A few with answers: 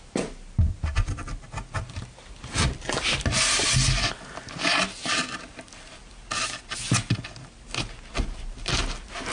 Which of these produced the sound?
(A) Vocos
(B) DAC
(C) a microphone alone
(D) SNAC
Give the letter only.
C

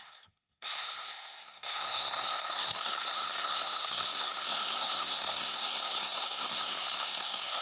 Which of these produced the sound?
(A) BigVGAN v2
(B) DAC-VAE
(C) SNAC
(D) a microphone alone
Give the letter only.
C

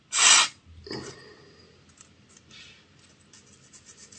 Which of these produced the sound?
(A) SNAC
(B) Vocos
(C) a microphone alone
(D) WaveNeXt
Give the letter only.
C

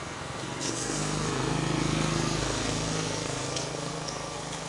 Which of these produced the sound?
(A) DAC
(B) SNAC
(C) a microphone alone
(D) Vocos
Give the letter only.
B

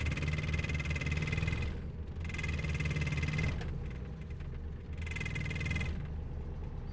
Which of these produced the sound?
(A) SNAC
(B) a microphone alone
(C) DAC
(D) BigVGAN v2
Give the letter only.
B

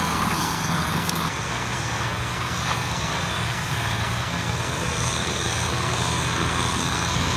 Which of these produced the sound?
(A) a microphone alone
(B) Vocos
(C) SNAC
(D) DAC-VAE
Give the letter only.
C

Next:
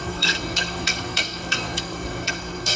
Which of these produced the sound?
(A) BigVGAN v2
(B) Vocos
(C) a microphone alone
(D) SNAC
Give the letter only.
D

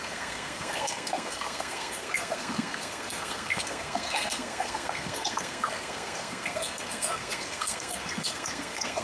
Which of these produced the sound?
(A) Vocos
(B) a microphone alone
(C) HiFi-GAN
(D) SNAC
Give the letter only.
D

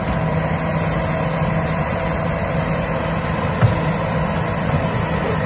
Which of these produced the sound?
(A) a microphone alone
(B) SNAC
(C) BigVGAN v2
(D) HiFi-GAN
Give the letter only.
A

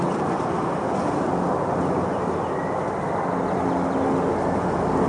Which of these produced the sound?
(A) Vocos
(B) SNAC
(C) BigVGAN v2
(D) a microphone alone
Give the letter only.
D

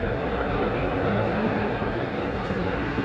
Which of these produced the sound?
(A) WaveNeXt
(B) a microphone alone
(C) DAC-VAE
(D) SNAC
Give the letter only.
D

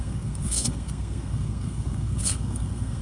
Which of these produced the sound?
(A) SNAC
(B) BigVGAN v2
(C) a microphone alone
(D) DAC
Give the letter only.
A